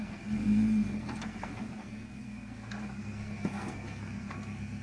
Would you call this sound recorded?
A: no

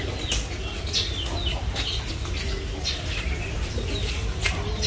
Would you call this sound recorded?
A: yes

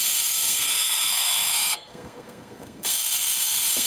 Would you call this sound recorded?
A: no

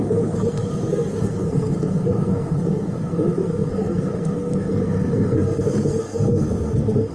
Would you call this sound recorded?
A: no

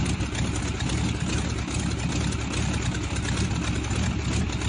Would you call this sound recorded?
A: yes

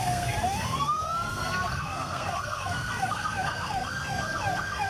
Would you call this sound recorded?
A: no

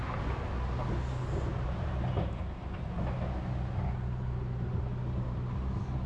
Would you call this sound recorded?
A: yes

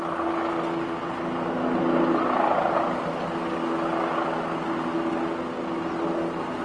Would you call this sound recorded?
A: yes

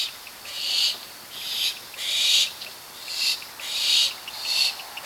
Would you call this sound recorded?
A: yes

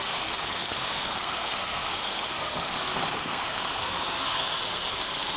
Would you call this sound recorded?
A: no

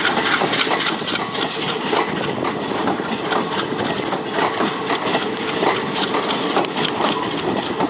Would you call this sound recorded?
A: yes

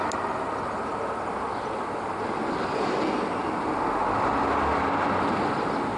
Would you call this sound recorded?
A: yes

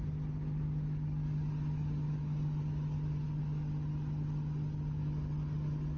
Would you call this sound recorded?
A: yes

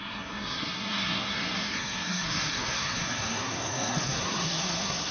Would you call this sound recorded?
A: no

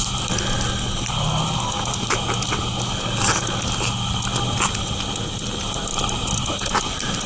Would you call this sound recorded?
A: yes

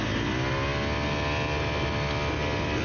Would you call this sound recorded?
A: yes